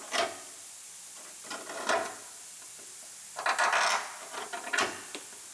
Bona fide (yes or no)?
yes